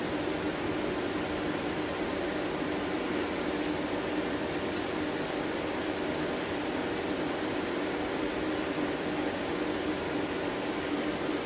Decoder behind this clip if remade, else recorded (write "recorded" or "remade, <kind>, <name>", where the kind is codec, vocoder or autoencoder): recorded